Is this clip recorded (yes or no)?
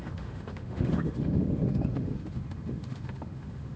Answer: no